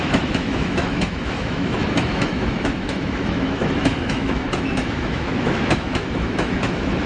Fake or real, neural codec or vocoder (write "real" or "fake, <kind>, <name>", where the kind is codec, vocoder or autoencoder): fake, autoencoder, DAC-VAE